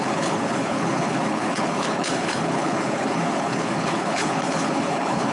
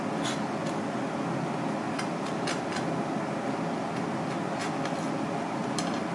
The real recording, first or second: second